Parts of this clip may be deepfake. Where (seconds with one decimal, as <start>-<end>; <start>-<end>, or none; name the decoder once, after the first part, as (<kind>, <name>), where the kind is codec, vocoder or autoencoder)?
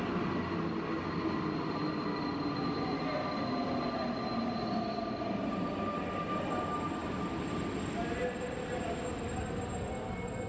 none